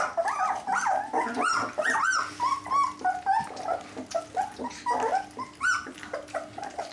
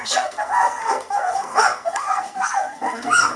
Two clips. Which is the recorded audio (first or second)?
first